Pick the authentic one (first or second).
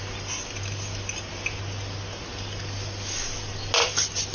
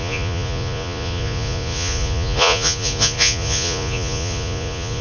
first